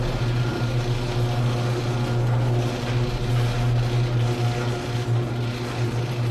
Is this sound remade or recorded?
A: recorded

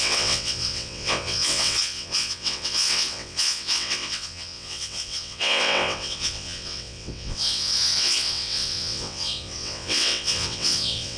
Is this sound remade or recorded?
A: remade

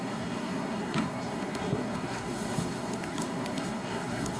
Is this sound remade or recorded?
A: remade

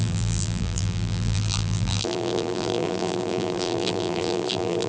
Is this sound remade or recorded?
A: remade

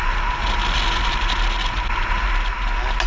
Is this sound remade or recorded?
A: recorded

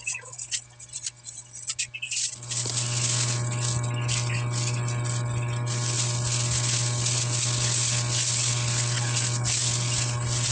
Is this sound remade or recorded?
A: recorded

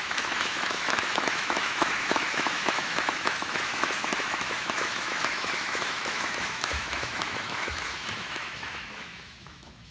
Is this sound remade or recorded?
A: remade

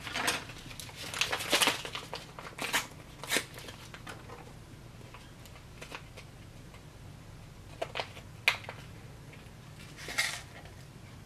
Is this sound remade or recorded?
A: recorded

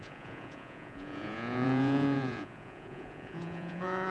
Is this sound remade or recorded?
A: remade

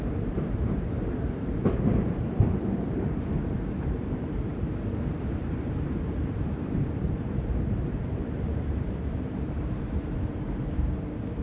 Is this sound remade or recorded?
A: remade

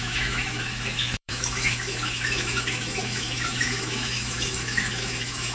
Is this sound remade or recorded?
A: remade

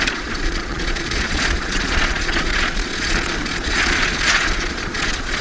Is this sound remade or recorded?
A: remade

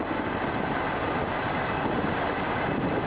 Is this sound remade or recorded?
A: recorded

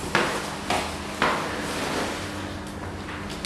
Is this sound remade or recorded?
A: recorded